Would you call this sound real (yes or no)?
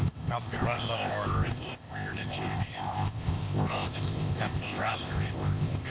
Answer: no